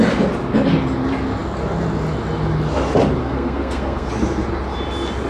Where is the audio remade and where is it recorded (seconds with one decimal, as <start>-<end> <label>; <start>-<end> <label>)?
0.0-3.2 recorded; 3.2-4.1 remade; 4.1-5.3 recorded